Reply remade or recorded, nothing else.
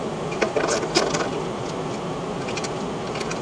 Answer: recorded